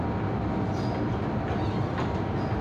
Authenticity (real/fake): real